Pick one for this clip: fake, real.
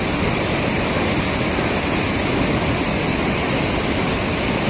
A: real